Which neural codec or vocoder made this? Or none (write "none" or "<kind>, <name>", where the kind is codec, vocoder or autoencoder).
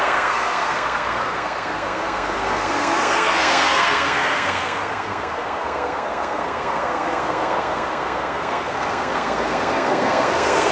codec, SNAC